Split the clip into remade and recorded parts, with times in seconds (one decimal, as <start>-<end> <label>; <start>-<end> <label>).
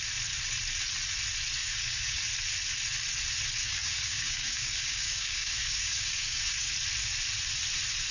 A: 0.0-1.6 recorded; 1.6-2.2 remade; 2.2-3.6 recorded; 3.6-6.7 remade; 6.7-8.1 recorded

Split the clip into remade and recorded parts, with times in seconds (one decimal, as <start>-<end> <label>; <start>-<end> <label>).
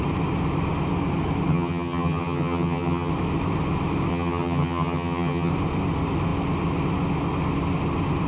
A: 0.0-1.5 recorded; 1.5-3.1 remade; 3.1-4.1 recorded; 4.1-5.5 remade; 5.5-8.3 recorded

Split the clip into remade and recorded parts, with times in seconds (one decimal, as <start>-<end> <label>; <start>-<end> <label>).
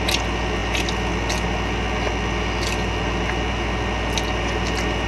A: 0.0-5.1 recorded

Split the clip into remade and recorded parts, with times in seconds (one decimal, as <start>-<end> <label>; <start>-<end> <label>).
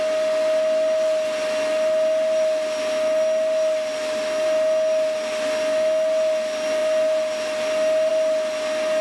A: 0.0-9.0 recorded